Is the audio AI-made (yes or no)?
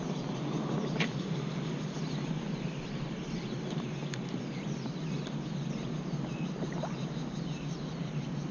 yes